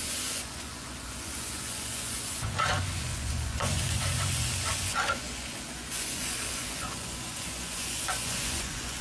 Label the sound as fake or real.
fake